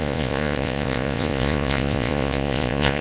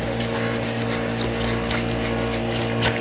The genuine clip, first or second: second